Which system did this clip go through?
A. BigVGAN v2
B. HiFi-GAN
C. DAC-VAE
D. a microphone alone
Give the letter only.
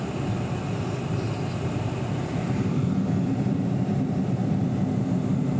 D